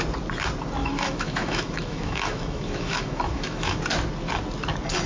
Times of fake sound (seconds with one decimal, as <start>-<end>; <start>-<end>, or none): 0.8-3.8